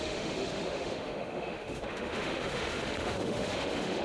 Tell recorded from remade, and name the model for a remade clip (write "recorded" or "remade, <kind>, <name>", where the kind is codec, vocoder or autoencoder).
remade, autoencoder, DAC-VAE